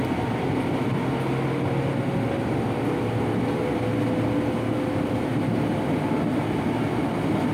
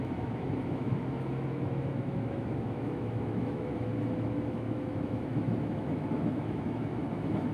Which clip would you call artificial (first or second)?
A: second